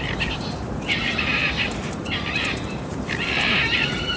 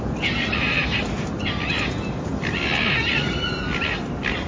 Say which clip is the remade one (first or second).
first